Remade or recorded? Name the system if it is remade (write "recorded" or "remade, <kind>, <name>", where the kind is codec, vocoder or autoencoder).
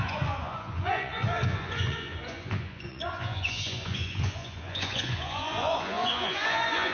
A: remade, vocoder, Vocos